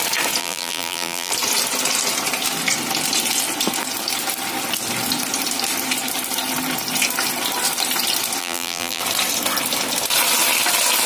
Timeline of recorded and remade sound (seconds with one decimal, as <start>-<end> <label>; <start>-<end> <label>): 0.0-0.4 recorded; 0.4-1.3 remade; 1.3-8.4 recorded; 8.4-9.0 remade; 9.0-11.1 recorded